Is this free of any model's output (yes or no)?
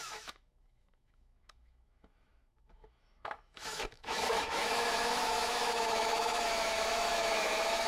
no